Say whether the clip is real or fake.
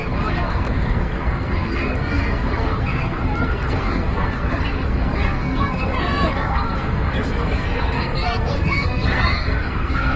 fake